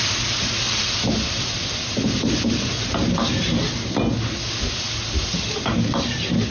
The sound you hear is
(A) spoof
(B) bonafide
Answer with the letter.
B